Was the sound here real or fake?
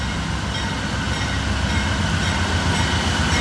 real